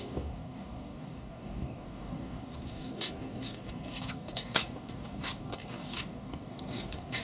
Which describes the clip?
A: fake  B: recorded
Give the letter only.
A